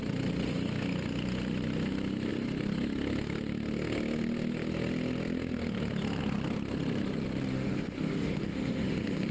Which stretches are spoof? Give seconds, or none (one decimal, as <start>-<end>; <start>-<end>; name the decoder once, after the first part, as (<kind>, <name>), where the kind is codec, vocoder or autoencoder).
7.5-9.3 (autoencoder, DAC-VAE)

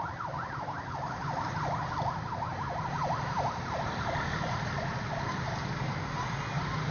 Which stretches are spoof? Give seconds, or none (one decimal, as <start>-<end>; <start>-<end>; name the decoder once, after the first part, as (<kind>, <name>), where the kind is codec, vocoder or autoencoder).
none

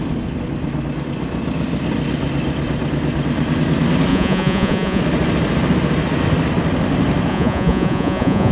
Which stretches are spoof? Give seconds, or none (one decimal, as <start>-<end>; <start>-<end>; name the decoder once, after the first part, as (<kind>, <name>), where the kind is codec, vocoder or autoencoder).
4.1-5.0 (vocoder, Vocos); 7.3-8.5